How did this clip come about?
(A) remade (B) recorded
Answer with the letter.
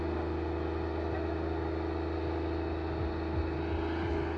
B